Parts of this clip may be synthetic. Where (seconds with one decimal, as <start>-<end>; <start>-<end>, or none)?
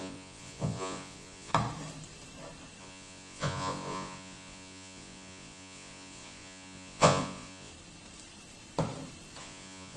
0.0-1.5; 2.8-7.7; 9.4-10.0